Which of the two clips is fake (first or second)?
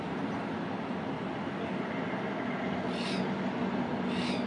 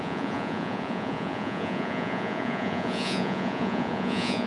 second